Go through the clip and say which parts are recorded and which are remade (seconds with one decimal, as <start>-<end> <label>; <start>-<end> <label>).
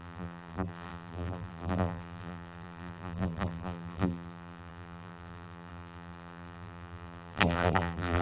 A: 0.0-8.2 remade